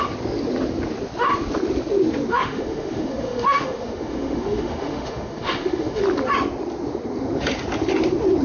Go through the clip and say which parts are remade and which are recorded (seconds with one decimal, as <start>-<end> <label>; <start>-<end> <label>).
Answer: 0.0-2.3 recorded; 2.3-6.0 remade; 6.0-8.4 recorded